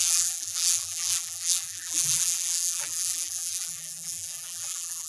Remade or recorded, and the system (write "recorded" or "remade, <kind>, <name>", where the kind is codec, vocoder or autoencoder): remade, vocoder, BigVGAN v2